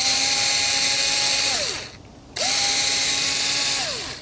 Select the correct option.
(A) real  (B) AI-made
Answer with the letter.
B